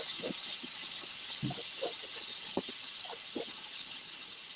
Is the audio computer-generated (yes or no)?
no